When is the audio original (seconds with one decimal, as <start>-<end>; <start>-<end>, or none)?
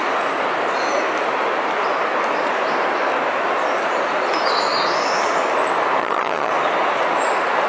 0.0-6.0; 6.5-7.7